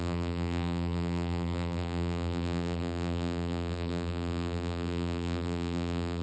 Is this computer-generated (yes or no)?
yes